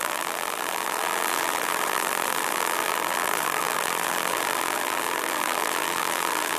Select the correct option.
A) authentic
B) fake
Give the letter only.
B